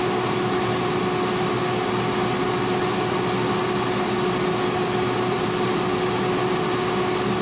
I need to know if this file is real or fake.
real